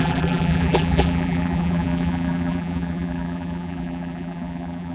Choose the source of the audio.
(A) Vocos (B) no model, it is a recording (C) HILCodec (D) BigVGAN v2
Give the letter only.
D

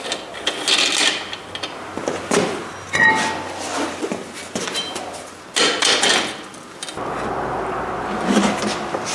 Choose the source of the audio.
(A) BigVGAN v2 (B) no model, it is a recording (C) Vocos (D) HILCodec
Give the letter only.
B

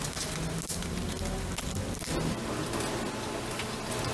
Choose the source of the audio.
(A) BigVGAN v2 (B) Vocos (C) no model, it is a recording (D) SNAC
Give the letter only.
C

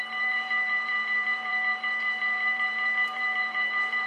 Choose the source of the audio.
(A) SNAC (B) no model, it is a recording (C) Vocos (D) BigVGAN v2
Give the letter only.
D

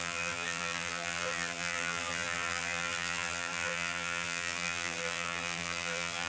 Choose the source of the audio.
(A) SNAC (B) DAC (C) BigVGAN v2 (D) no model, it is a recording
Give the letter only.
C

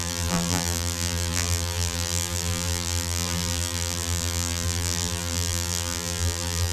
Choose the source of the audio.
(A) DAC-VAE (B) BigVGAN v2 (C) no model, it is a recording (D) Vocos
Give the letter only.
B